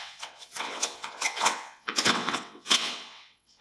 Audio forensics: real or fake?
fake